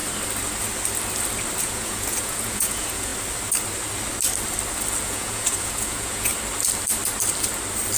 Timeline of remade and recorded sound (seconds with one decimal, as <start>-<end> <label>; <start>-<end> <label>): 0.0-1.6 recorded; 1.6-3.1 remade; 3.1-5.0 recorded; 5.0-6.3 remade; 6.3-8.0 recorded